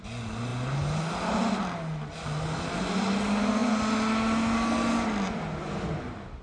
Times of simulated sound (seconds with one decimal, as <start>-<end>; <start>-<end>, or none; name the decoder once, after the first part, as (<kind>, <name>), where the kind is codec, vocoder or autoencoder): none